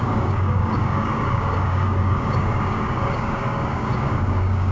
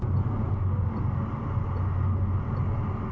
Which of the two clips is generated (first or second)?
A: first